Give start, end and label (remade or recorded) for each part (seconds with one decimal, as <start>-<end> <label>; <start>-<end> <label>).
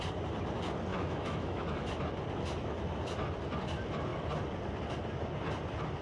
0.0-0.9 recorded; 0.9-2.0 remade; 2.0-6.0 recorded